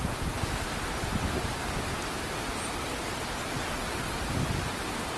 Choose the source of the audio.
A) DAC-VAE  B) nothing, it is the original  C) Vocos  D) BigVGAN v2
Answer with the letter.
B